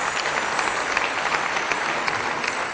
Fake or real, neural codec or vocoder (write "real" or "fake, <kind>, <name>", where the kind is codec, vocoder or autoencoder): real